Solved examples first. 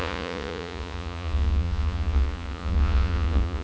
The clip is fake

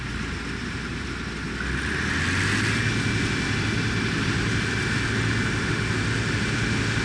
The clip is real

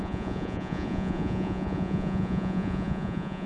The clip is fake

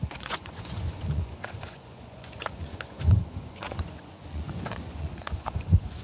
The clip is fake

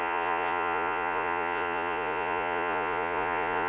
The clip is fake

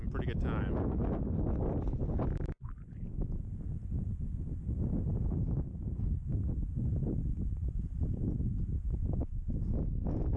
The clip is real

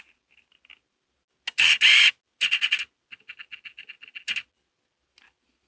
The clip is real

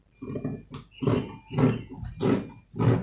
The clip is real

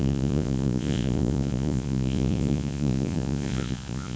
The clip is fake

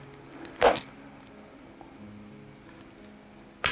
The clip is real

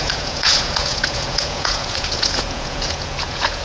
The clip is fake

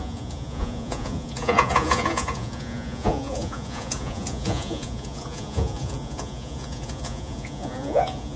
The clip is fake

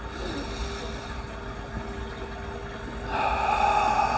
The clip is real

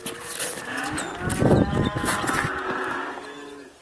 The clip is real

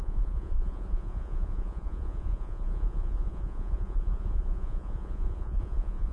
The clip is fake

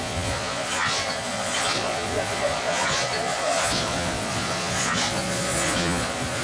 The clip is fake